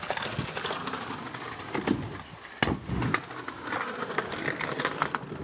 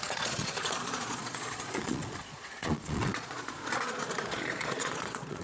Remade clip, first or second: second